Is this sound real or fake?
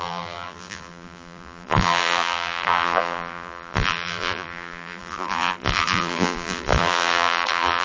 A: fake